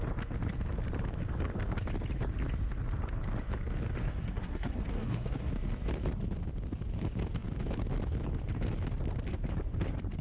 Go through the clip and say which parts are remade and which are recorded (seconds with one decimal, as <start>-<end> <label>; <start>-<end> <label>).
0.0-4.0 recorded; 4.0-5.5 remade; 5.5-10.2 recorded